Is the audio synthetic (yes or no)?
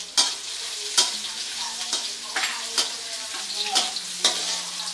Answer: no